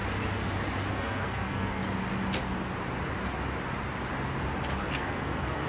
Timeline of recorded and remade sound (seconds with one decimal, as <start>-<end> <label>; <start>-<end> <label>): 0.0-0.9 recorded; 0.9-1.8 remade; 1.8-4.7 recorded; 4.7-5.7 remade